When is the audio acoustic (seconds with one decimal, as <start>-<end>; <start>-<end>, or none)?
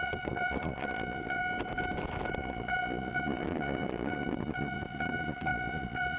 1.4-2.3